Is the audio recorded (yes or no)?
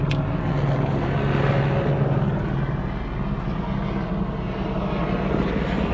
yes